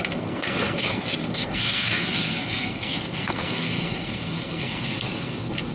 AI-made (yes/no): yes